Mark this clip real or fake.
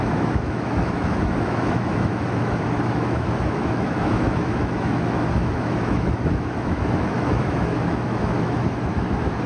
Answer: fake